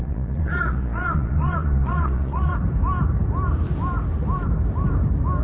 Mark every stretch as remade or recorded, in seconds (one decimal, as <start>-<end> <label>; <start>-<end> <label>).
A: 0.0-2.5 remade; 2.5-5.4 recorded